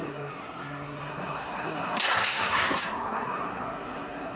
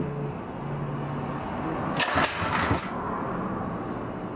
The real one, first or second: second